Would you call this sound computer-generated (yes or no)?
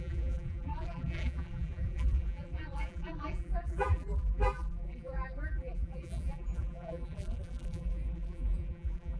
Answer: yes